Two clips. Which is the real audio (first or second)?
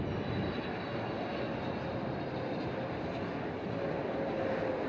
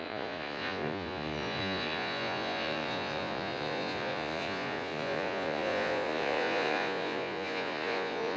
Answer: first